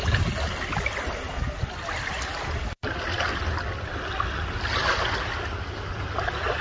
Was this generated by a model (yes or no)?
no